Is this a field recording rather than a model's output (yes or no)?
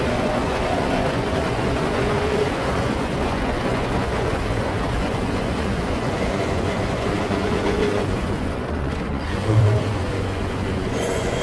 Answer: no